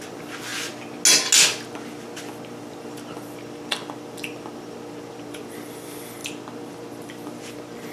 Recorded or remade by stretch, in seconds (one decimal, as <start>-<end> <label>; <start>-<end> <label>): 0.0-0.5 remade; 0.5-2.6 recorded; 2.6-6.2 remade; 6.2-6.7 recorded; 6.7-7.9 remade